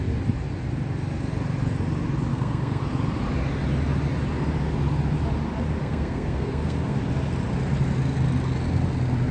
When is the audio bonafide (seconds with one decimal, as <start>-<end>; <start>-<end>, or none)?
0.0-2.3; 2.8-5.8; 7.0-9.3